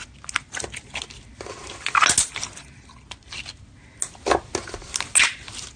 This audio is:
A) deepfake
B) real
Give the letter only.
B